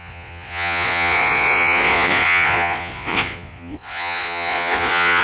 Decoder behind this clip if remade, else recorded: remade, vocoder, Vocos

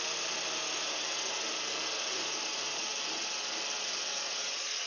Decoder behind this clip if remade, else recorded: recorded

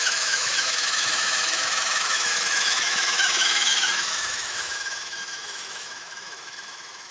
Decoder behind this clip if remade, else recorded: remade, autoencoder, DAC-VAE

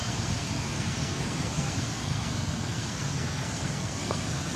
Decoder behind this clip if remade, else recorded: remade, codec, SNAC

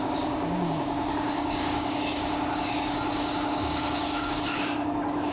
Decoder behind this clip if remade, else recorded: remade, codec, DAC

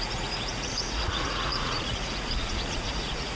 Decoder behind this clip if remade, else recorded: remade, vocoder, Vocos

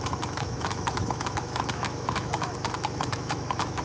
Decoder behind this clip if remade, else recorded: remade, autoencoder, DAC-VAE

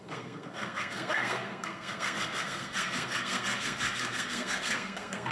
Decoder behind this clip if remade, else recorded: remade, codec, SNAC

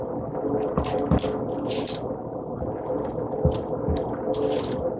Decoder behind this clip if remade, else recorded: recorded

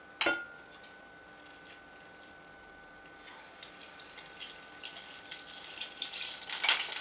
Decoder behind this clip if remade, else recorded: recorded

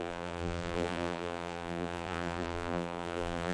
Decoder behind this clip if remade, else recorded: remade, vocoder, BigVGAN v2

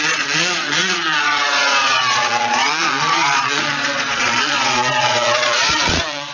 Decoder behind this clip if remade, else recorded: remade, vocoder, Vocos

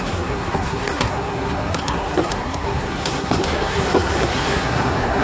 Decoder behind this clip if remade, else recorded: remade, codec, SNAC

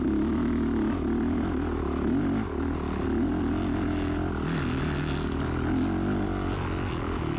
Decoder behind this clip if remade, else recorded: recorded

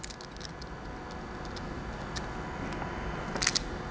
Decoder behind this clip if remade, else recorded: recorded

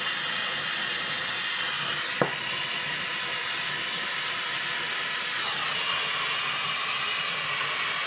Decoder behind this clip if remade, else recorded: recorded